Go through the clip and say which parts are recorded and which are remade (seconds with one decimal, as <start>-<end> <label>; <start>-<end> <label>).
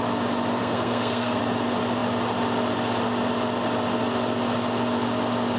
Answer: 0.0-0.6 recorded; 0.6-1.4 remade; 1.4-5.6 recorded